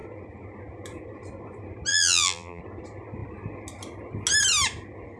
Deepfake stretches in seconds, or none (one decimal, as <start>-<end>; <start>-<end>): 1.9-2.6